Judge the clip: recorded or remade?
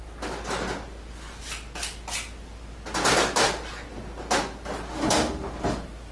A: recorded